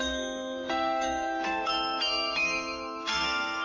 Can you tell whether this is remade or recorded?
remade